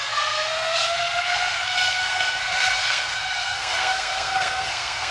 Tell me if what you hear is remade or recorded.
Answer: remade